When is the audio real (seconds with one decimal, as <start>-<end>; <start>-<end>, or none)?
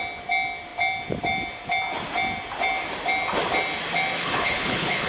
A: 0.0-4.2